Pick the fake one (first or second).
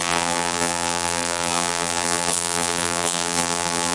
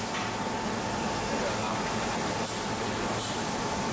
first